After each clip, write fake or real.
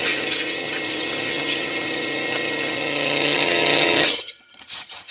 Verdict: fake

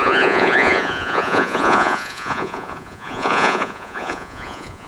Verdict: fake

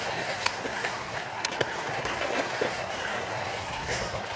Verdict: fake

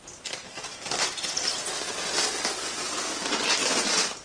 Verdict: real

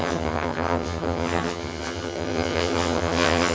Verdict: fake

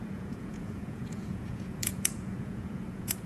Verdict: fake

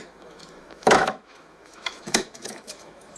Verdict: fake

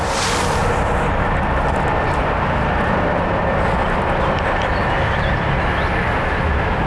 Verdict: real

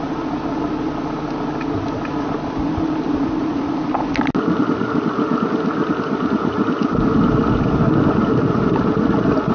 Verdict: real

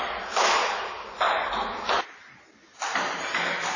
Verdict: real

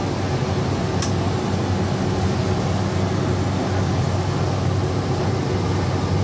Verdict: real